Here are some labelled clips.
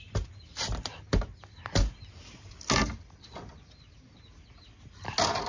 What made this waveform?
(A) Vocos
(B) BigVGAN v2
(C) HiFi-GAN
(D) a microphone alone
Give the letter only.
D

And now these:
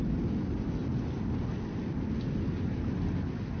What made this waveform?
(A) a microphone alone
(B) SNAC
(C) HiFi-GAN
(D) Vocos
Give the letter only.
A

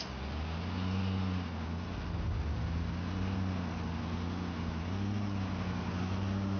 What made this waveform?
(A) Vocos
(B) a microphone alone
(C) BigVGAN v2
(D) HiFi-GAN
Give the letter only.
B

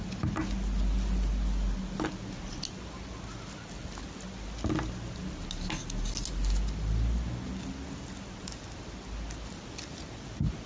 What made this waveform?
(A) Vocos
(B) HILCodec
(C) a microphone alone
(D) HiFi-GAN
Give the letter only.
C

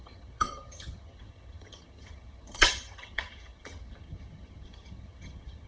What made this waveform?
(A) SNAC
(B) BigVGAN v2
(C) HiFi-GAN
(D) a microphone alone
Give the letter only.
C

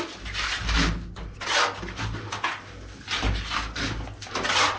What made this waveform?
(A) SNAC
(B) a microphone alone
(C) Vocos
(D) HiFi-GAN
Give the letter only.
B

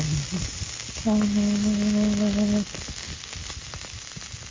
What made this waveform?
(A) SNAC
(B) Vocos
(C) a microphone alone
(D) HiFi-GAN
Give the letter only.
C